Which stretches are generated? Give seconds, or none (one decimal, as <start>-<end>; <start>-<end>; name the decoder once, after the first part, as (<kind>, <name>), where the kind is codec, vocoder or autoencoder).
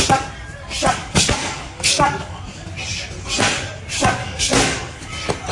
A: 1.0-2.7 (codec, DAC); 4.2-5.1